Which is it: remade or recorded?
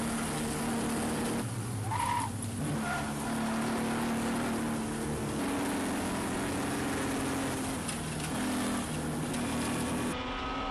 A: recorded